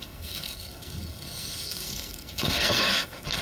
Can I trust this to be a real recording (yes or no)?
no